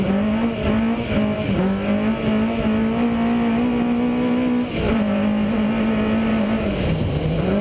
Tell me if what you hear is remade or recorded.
recorded